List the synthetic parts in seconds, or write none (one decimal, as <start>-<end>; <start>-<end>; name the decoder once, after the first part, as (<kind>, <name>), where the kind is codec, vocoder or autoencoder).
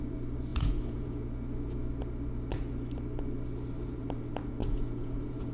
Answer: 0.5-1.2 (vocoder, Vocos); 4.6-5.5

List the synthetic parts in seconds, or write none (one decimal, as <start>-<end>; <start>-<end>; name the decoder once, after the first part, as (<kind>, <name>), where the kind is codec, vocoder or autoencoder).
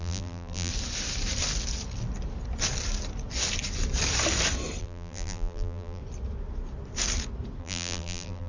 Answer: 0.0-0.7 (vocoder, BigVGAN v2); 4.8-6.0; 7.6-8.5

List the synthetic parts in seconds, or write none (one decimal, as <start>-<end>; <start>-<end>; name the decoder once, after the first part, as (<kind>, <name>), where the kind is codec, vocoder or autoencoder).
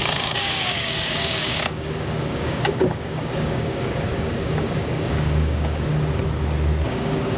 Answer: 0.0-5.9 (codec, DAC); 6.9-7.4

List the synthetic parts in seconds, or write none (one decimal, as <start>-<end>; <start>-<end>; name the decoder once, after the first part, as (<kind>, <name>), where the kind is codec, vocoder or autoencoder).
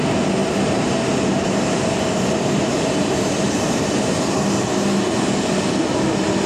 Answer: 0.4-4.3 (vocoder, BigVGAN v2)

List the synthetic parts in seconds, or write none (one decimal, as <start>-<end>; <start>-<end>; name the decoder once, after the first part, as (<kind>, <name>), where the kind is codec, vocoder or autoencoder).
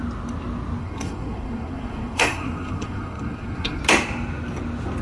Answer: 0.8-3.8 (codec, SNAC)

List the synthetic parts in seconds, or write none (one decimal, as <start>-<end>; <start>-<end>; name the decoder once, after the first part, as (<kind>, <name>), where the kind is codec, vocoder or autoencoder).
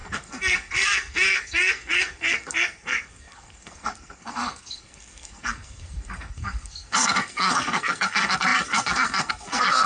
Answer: 0.0-9.9 (codec, SNAC)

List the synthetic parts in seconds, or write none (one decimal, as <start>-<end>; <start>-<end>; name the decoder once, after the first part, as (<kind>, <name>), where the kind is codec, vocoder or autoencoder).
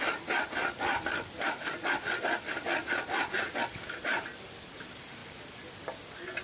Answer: none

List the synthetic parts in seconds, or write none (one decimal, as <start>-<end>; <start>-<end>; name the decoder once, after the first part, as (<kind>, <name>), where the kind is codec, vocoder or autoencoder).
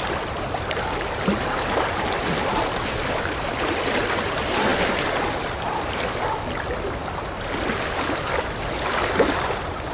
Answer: 0.0-7.0 (vocoder, BigVGAN v2); 8.6-9.9